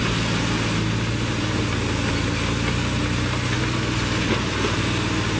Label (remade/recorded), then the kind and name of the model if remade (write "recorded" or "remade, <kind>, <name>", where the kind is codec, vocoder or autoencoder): recorded